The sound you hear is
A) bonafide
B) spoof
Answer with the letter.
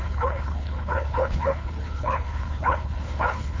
B